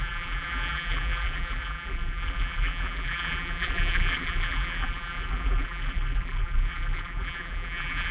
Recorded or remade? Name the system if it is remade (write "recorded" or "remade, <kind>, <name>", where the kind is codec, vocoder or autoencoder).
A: remade, vocoder, BigVGAN v2